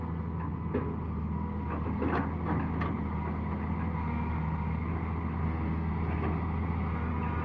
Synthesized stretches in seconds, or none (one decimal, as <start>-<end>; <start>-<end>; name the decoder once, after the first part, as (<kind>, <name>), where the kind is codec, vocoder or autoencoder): 5.4-5.9 (codec, SNAC)